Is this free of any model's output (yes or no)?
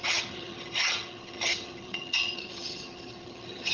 no